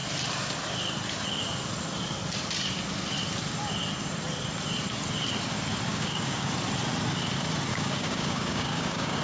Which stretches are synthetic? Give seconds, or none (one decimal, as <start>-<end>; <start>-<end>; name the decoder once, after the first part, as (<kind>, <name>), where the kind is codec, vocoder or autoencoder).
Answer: 5.9-6.5 (codec, DAC); 7.7-9.2